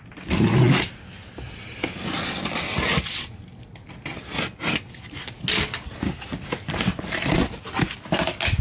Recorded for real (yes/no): yes